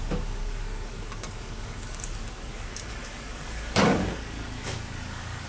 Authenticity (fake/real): fake